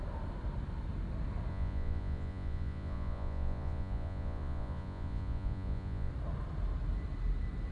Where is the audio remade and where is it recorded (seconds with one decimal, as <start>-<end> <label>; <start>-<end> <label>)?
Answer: 0.0-1.5 recorded; 1.5-6.1 remade; 6.1-7.7 recorded